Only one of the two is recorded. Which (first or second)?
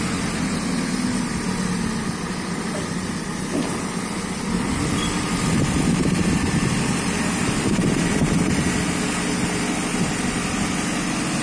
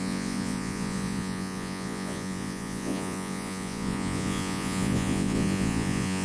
first